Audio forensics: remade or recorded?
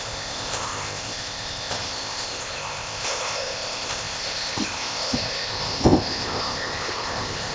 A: remade